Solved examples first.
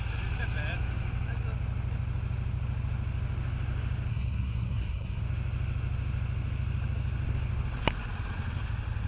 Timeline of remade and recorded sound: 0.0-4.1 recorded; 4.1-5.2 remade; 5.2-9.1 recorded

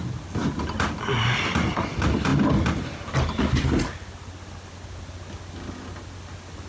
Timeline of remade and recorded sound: 0.0-6.7 recorded